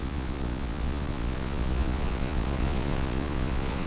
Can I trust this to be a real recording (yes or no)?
no